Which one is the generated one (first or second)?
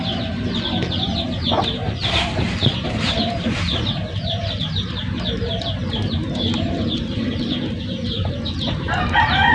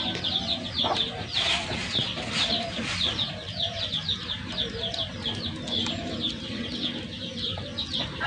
first